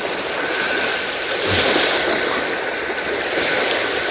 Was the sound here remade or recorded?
recorded